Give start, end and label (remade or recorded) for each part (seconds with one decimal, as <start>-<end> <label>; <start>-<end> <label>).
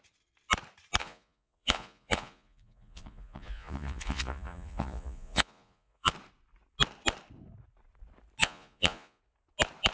0.0-1.0 recorded; 1.0-6.1 remade; 6.1-8.4 recorded; 8.4-9.2 remade; 9.2-9.9 recorded